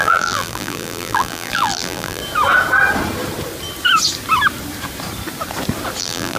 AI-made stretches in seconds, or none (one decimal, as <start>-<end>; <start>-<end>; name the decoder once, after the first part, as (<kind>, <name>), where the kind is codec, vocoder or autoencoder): 0.0-2.2 (vocoder, BigVGAN v2); 6.0-6.4